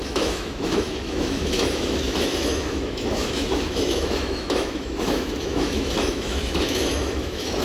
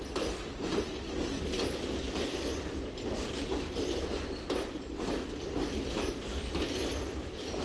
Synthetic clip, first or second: first